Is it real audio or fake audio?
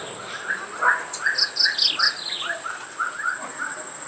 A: real